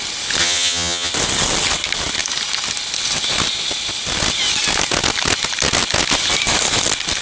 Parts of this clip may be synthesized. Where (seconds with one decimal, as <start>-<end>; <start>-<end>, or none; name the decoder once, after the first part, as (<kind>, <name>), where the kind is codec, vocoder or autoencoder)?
0.4-1.1 (vocoder, HiFi-GAN)